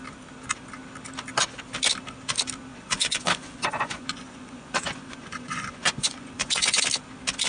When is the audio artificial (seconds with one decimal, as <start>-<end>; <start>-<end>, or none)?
2.7-6.8